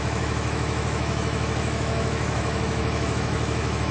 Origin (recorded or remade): remade